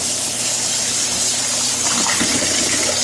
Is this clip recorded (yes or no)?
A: yes